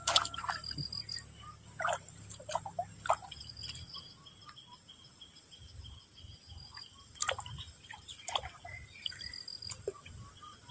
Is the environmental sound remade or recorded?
recorded